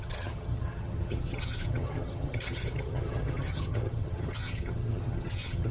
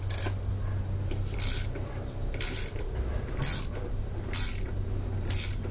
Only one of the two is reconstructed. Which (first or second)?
first